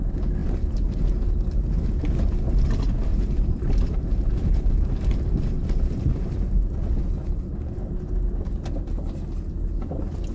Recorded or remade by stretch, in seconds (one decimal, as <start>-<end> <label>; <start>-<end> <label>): 0.0-3.1 recorded; 3.1-6.6 remade; 6.6-7.2 recorded; 7.2-8.8 remade; 8.8-10.3 recorded